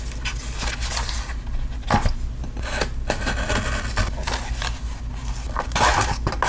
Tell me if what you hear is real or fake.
real